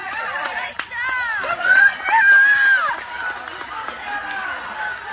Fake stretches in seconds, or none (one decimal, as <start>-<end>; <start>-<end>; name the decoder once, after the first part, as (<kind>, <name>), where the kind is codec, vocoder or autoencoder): 0.0-0.9 (vocoder, Vocos); 1.6-2.1